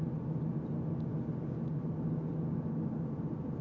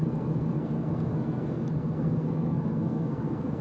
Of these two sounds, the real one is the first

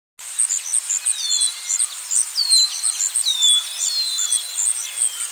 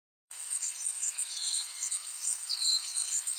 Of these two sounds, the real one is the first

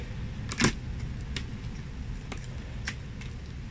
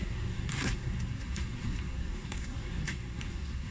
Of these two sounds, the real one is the first